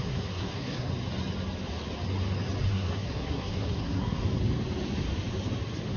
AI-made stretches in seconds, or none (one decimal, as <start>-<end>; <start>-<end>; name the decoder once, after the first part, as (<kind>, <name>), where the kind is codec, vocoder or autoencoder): 0.0-0.9 (codec, SNAC); 2.7-4.2